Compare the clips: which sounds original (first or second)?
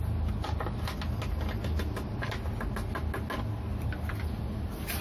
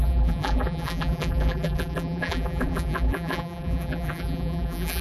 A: first